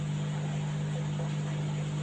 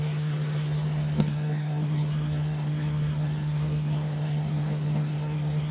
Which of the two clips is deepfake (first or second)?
second